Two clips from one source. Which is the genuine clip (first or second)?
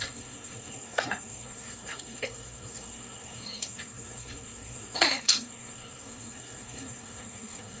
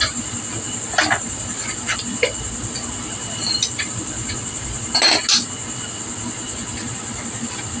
second